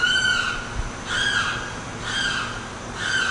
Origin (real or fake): real